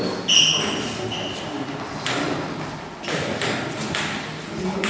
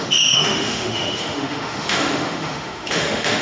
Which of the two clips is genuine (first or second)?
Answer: first